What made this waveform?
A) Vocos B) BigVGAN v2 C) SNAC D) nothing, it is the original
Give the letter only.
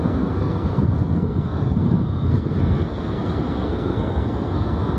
C